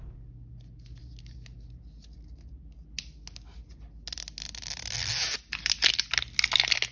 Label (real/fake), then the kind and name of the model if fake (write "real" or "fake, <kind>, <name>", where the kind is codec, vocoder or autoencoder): real